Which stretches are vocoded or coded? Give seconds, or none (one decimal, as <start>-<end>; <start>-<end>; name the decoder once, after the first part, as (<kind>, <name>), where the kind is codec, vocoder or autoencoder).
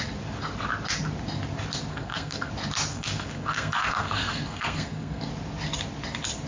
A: 1.9-2.5 (codec, SNAC); 2.9-5.3